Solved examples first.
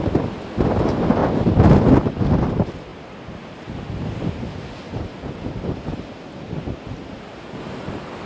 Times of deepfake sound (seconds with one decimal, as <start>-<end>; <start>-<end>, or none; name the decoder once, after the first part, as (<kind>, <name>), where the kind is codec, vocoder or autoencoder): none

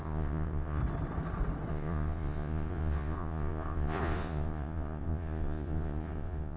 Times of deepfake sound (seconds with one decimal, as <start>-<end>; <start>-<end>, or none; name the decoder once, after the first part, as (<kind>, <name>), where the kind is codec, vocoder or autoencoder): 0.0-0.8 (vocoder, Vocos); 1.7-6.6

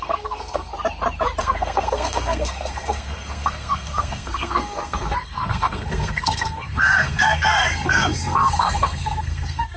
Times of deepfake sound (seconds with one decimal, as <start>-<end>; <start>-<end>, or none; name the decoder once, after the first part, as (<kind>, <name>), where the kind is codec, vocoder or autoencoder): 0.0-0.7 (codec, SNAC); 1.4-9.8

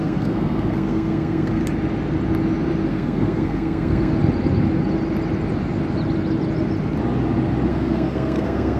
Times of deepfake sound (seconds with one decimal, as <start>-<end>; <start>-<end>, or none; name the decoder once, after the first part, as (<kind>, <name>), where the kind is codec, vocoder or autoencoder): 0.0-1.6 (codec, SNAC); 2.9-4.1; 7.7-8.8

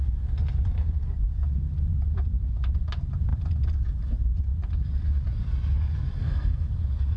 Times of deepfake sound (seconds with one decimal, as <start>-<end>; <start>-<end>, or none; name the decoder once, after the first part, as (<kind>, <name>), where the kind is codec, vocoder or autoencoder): 6.2-6.7 (codec, SNAC)